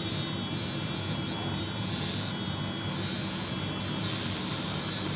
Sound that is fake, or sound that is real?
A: real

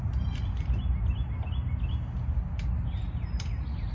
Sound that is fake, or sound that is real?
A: real